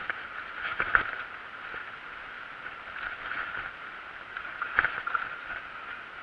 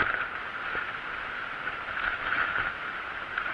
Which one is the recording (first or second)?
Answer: first